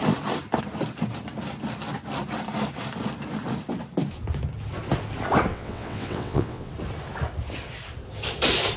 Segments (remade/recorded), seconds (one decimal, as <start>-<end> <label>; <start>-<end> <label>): 0.0-5.5 recorded; 5.5-6.7 remade; 6.7-8.8 recorded